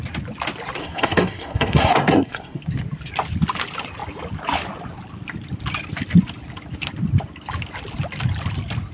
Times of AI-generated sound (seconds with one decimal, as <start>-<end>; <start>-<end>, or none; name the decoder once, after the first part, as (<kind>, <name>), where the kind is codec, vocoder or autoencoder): 0.8-2.6 (codec, SNAC)